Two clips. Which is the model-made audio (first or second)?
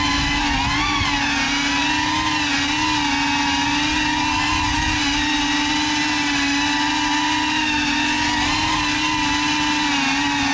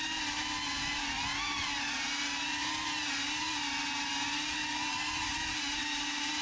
second